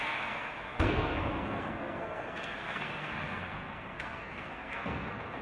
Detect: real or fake fake